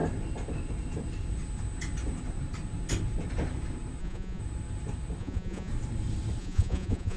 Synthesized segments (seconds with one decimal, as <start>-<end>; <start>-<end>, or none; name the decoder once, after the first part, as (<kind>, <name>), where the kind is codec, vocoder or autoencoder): 4.0-4.4 (vocoder, Vocos); 5.2-5.7; 6.4-7.2